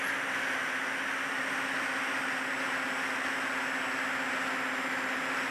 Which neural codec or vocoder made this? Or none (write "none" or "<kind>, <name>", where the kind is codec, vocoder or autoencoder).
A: none